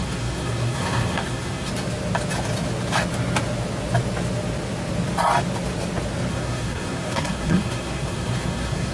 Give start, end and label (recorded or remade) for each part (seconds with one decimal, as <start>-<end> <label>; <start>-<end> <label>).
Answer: 0.0-1.7 remade; 1.7-6.3 recorded; 6.3-8.9 remade